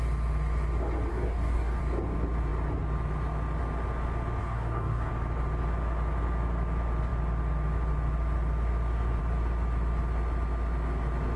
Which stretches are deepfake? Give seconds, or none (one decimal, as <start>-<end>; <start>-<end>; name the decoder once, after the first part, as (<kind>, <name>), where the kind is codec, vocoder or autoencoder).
1.1-1.8 (codec, DAC); 4.4-5.1